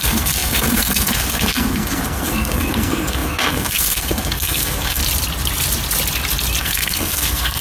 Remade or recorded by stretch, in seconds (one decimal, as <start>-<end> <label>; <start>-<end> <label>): 0.0-5.0 remade; 5.0-6.6 recorded; 6.6-7.6 remade